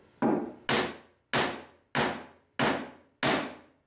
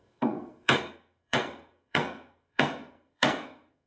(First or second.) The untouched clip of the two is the first